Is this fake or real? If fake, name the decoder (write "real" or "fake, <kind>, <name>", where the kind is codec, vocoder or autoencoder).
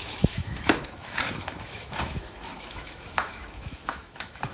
fake, autoencoder, DAC-VAE